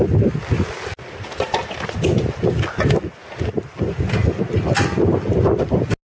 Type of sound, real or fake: real